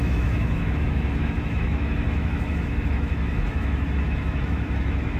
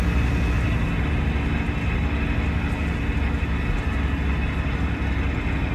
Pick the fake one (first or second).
first